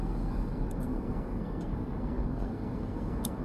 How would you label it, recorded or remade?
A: remade